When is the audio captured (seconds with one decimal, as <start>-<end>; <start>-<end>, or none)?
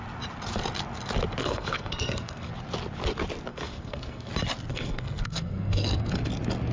0.0-1.4; 2.5-3.5; 4.3-4.7; 6.1-6.7